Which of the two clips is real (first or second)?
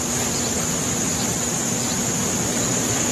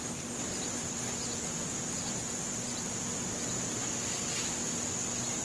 second